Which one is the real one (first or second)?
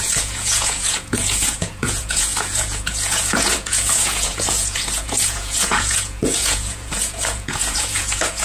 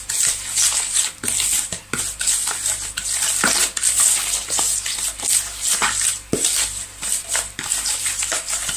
second